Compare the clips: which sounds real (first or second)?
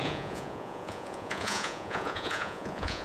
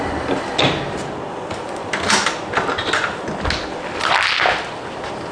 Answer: second